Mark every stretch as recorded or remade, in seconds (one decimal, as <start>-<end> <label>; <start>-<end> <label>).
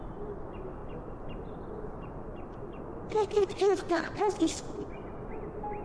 0.0-5.8 recorded